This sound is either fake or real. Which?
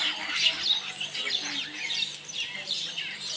real